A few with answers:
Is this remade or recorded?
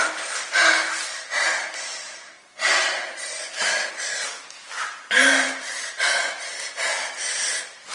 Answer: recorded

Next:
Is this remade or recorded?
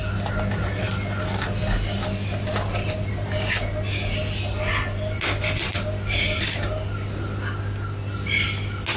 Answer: recorded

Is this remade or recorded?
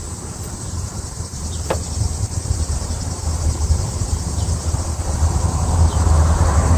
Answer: remade